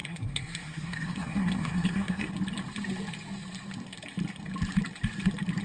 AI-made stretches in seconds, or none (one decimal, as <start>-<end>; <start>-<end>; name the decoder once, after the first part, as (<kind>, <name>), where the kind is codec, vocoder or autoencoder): 0.0-2.3 (codec, SNAC)